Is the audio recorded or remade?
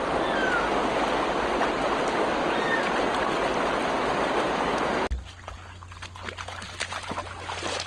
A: recorded